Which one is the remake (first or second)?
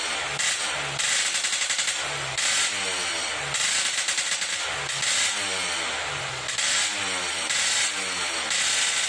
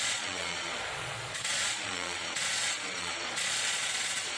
second